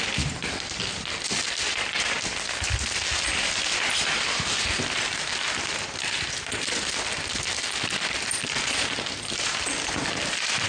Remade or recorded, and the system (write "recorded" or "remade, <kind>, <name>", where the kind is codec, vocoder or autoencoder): recorded